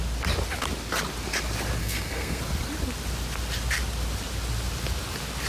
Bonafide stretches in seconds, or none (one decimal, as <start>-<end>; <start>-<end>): 0.0-1.8; 2.4-5.5